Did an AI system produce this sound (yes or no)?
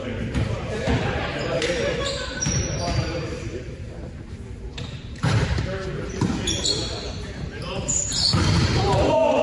yes